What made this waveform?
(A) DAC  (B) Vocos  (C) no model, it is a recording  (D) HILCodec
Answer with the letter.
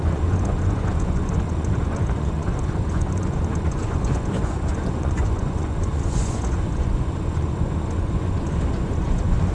B